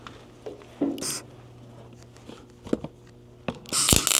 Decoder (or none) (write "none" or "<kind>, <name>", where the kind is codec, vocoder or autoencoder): none